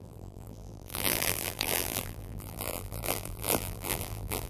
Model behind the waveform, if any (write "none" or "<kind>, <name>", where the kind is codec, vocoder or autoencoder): vocoder, BigVGAN v2